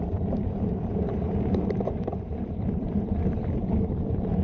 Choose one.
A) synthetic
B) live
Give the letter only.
A